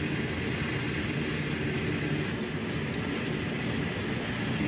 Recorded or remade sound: recorded